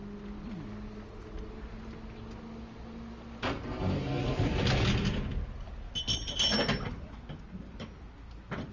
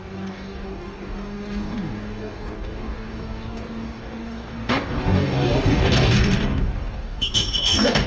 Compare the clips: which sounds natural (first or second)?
first